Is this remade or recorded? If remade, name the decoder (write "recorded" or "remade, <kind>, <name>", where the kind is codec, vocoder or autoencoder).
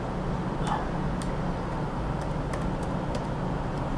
recorded